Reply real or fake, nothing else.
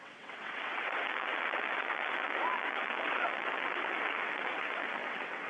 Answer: fake